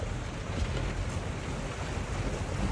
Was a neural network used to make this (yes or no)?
no